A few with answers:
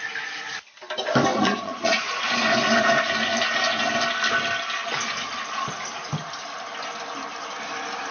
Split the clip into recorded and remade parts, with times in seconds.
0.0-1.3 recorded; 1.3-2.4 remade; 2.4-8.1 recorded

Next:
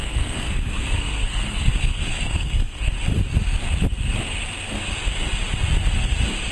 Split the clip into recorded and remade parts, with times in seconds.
0.0-2.9 remade; 2.9-6.5 recorded